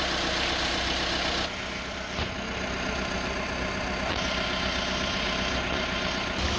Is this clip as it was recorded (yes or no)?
yes